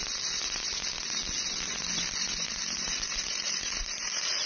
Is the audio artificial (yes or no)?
no